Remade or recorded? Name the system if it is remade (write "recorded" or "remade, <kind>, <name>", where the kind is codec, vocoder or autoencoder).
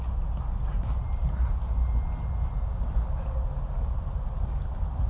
recorded